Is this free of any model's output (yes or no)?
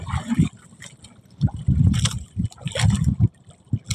yes